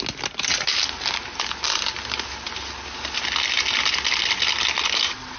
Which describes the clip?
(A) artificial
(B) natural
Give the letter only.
B